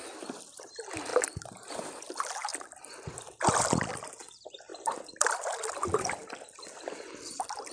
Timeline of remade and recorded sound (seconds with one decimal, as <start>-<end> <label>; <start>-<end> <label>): 0.0-1.1 recorded; 1.1-2.0 remade; 2.0-2.5 recorded; 2.5-3.9 remade; 3.9-4.7 recorded; 4.7-6.3 remade; 6.3-7.7 recorded